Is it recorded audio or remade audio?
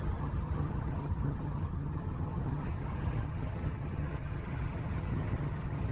remade